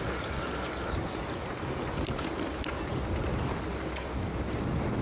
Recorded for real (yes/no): yes